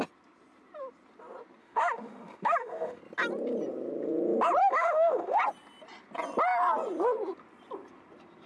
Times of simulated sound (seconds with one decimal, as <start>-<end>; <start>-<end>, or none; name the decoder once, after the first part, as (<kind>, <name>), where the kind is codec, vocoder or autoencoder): 1.6-3.0 (autoencoder, DAC-VAE); 4.6-5.4